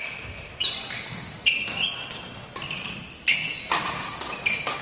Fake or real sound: real